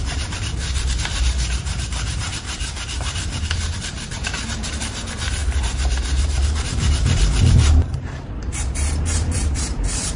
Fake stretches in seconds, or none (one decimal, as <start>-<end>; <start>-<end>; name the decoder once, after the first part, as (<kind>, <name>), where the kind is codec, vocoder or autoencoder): 0.0-10.2 (vocoder, BigVGAN v2)